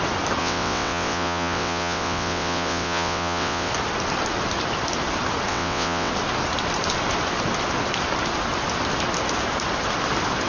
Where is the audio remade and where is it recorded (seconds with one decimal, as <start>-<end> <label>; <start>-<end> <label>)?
0.0-0.4 recorded; 0.4-3.7 remade; 3.7-5.5 recorded; 5.5-6.1 remade; 6.1-10.5 recorded